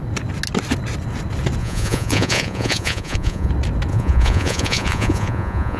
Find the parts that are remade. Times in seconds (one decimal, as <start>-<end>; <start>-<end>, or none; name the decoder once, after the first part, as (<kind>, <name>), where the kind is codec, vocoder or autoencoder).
1.6-3.5 (vocoder, Vocos); 3.9-5.8